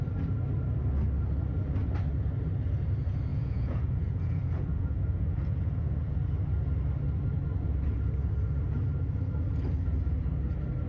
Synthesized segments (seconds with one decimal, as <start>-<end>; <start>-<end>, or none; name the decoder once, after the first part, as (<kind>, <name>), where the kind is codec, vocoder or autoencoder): 3.3-6.2 (vocoder, Vocos)